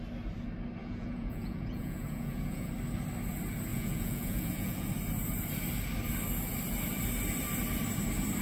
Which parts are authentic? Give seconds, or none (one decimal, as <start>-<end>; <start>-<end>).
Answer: 0.0-0.8; 2.7-3.7; 4.9-8.4